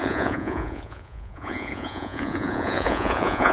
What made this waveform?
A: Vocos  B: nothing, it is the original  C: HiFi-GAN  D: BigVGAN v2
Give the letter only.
A